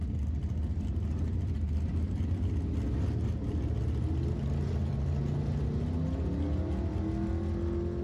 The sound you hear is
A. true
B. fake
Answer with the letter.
A